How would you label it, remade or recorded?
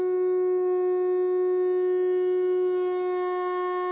recorded